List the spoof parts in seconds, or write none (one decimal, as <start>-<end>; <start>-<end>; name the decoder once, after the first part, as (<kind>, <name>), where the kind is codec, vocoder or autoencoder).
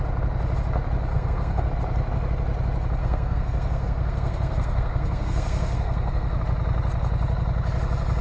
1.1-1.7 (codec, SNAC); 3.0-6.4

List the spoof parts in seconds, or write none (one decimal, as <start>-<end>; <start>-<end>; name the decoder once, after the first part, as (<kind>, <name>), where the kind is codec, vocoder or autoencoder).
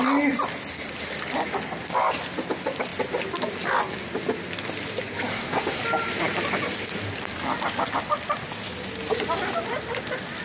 5.3-5.8 (codec, SNAC)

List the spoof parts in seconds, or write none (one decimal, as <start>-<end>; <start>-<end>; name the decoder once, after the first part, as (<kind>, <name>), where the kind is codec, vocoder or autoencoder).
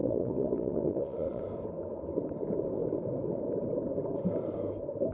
0.0-1.4 (vocoder, Vocos)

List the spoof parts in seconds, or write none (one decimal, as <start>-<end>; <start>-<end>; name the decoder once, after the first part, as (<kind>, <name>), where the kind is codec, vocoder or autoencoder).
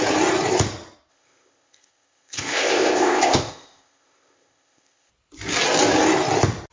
1.1-5.1 (codec, ZipCodec)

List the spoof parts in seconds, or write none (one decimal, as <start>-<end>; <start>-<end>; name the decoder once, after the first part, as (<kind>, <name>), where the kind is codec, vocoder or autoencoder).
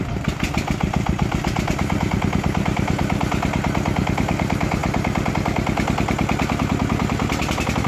none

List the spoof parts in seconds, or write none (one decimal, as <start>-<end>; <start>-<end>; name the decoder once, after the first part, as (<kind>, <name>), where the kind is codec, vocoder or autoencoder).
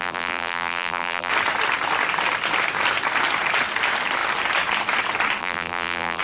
0.0-1.3 (vocoder, BigVGAN v2); 5.4-6.2